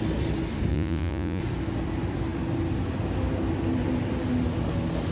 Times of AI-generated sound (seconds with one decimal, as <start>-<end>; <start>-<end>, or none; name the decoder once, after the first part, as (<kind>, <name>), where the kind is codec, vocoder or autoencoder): 0.7-1.4 (vocoder, Vocos)